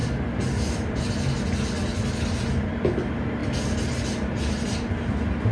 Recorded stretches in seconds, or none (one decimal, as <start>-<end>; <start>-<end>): 1.0-1.9; 2.9-5.5